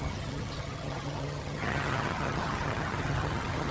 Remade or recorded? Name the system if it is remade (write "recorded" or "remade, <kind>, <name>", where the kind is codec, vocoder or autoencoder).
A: remade, vocoder, HiFi-GAN